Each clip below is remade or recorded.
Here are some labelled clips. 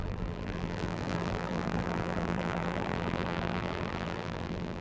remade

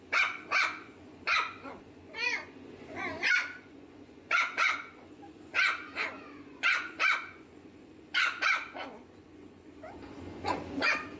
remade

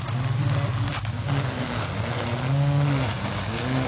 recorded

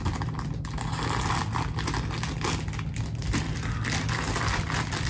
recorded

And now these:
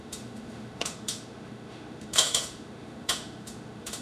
remade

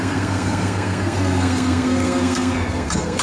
remade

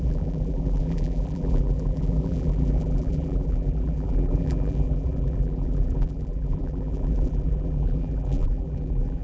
remade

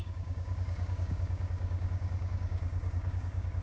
remade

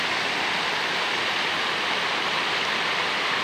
remade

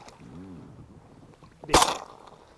recorded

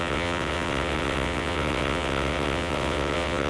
remade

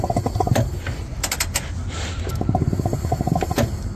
recorded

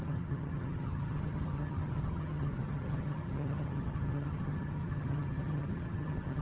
remade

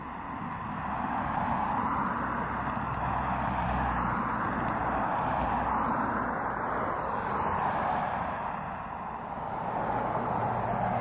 recorded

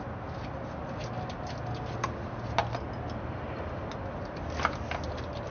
recorded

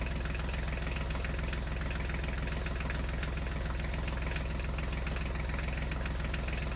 recorded